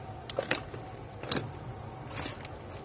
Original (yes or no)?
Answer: yes